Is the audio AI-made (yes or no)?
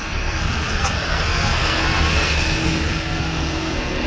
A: yes